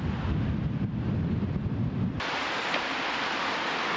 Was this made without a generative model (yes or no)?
yes